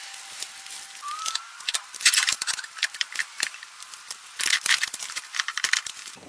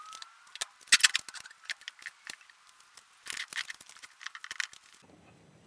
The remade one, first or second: first